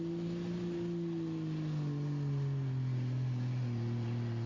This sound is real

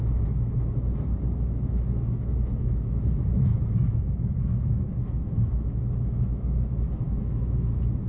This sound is fake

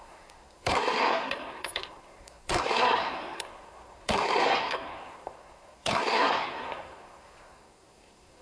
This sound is fake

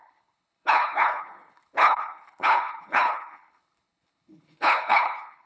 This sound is fake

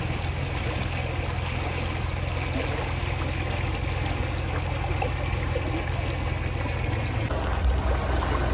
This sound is real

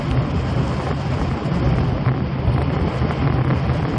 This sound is real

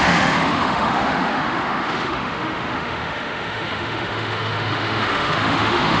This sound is fake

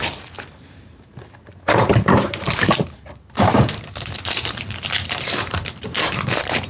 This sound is fake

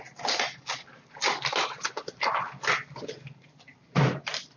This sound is real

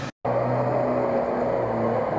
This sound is real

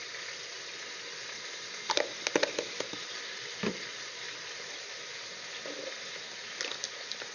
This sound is real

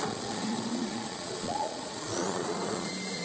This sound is fake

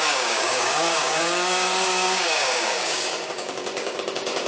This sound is fake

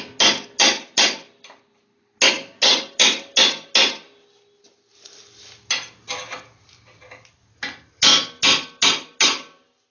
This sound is real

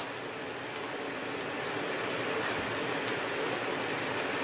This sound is real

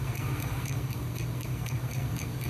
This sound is fake